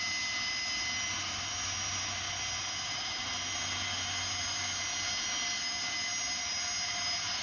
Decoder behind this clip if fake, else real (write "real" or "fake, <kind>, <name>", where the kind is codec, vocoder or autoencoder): real